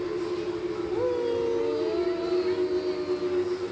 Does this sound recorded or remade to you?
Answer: recorded